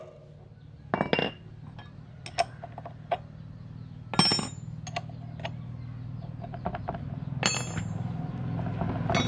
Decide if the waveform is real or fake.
real